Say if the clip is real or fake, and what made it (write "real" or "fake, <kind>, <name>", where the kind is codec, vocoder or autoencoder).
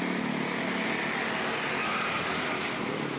real